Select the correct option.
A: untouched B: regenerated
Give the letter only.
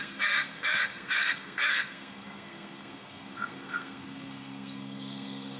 B